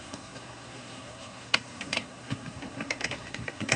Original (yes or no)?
no